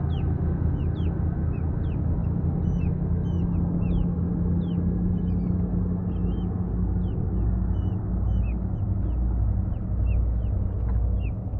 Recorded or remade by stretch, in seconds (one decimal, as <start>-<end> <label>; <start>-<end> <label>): 0.0-11.6 recorded